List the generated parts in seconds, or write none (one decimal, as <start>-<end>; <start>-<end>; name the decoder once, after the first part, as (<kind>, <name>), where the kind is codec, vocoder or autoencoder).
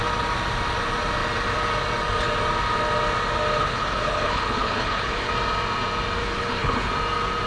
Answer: 3.6-5.3 (codec, HILCodec); 6.2-6.9